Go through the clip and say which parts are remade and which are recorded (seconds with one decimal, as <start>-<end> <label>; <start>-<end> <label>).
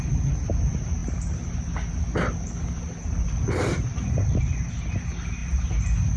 0.0-6.2 recorded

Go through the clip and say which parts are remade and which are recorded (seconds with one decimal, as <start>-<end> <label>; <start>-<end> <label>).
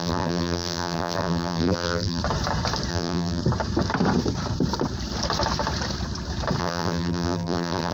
0.0-2.2 remade; 2.2-2.9 recorded; 2.9-3.4 remade; 3.4-6.6 recorded; 6.6-7.9 remade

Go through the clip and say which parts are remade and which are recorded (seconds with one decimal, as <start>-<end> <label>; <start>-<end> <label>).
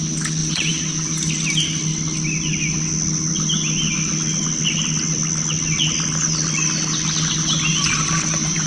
0.0-0.4 recorded; 0.4-1.3 remade; 1.3-7.7 recorded; 7.7-8.7 remade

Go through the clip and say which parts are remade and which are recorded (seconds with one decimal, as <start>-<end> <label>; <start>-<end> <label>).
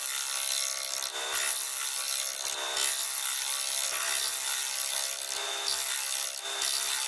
0.0-7.1 recorded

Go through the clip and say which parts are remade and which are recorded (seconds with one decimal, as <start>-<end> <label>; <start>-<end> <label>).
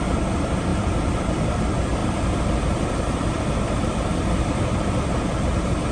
0.0-0.7 recorded; 0.7-1.6 remade; 1.6-2.0 recorded; 2.0-4.8 remade; 4.8-5.9 recorded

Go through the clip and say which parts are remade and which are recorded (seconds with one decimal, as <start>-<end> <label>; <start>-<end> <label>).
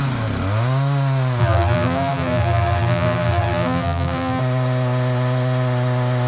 0.0-1.4 recorded; 1.4-4.4 remade; 4.4-6.3 recorded